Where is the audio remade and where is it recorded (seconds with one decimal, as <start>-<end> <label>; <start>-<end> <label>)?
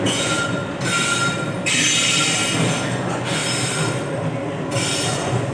0.0-0.6 remade; 0.6-2.9 recorded; 2.9-3.4 remade; 3.4-5.1 recorded; 5.1-5.5 remade